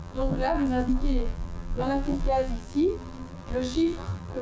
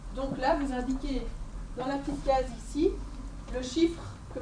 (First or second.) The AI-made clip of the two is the first